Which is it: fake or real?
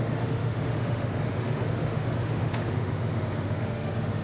fake